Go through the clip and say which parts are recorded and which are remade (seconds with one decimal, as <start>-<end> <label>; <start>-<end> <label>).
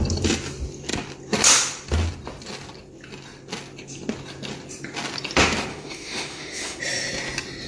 0.0-5.7 recorded; 5.7-6.8 remade; 6.8-7.7 recorded